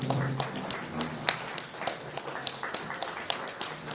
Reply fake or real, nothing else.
real